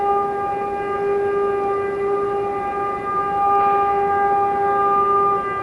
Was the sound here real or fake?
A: real